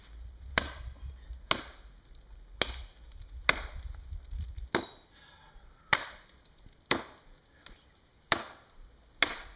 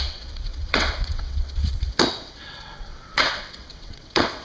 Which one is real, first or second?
first